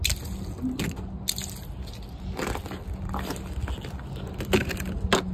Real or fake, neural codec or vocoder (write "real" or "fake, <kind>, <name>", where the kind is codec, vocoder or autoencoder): real